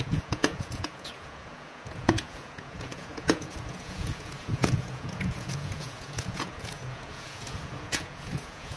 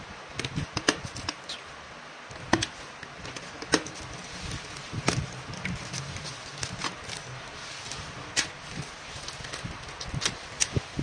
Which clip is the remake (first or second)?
first